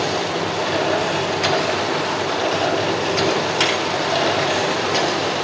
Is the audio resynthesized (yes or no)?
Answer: no